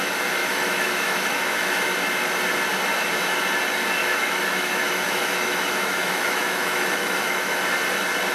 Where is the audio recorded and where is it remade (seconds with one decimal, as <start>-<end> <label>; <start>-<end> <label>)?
0.0-0.4 recorded; 0.4-1.7 remade; 1.7-4.0 recorded; 4.0-7.6 remade; 7.6-8.3 recorded